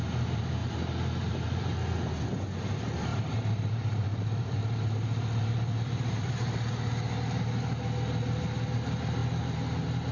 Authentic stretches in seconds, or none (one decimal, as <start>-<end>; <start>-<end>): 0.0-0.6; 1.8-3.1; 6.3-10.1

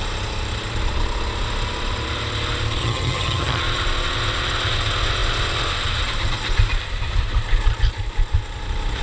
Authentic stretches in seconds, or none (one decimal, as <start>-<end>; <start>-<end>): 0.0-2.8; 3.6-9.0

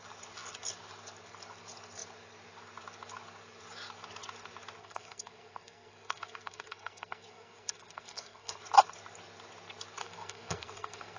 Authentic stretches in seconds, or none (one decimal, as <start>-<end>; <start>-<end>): 0.0-4.8; 8.6-10.0

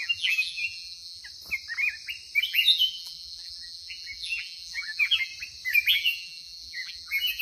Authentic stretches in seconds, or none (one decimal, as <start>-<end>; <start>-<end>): 1.2-2.5; 5.3-5.9